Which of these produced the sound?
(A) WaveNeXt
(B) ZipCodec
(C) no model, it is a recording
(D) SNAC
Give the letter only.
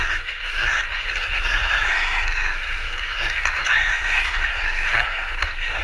D